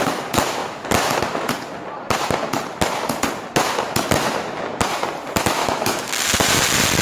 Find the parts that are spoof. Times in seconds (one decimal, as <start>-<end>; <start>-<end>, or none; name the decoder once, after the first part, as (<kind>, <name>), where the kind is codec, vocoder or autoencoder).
5.6-6.1 (autoencoder, DAC-VAE)